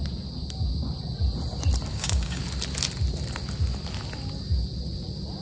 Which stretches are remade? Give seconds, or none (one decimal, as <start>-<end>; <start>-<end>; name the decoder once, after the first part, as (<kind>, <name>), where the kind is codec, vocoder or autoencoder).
1.9-2.4 (codec, DAC)